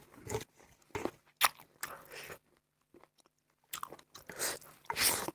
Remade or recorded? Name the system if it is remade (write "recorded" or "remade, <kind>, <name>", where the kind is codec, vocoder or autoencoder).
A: recorded